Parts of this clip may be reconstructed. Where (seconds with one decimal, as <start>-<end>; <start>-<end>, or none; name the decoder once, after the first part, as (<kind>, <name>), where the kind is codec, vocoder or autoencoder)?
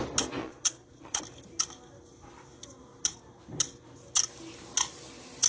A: 0.4-1.2 (vocoder, Vocos)